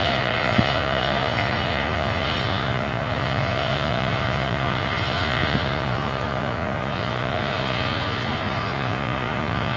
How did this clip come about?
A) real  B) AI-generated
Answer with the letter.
B